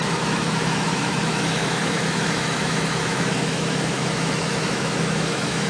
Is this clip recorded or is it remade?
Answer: remade